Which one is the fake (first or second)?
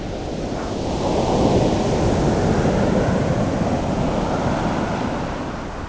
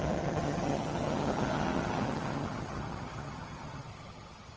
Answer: second